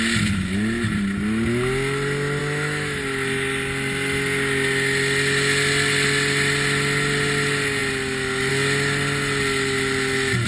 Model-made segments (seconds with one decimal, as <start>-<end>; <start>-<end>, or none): 2.4-3.0